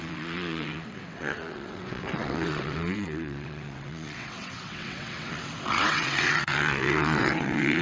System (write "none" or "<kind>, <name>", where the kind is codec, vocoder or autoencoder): vocoder, WaveNeXt